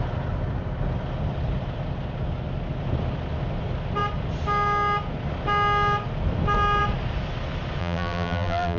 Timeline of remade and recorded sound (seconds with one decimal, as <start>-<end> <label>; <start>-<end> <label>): 0.0-7.8 recorded; 7.8-8.8 remade